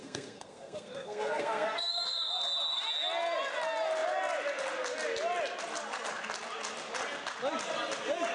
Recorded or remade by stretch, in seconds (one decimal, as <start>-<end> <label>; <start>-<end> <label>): 0.0-2.3 remade; 2.3-8.3 recorded